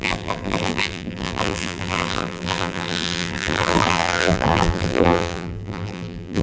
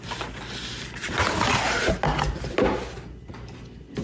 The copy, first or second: first